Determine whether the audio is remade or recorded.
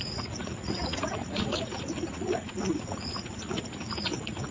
remade